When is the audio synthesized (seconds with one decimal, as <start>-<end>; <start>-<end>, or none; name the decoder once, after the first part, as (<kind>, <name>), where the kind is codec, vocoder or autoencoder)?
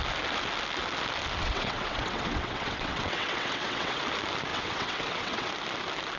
1.4-4.0 (vocoder, WaveNeXt); 4.5-5.5